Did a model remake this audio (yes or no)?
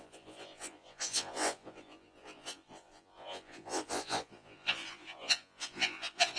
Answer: yes